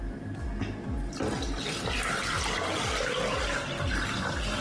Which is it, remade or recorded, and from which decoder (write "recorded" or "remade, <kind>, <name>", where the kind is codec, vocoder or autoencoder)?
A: recorded